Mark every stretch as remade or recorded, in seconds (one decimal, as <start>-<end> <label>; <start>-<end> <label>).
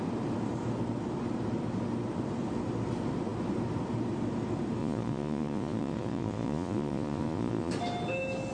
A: 0.0-4.8 recorded; 4.8-7.7 remade; 7.7-8.5 recorded